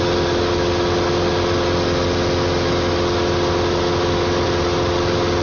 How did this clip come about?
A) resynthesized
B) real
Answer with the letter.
B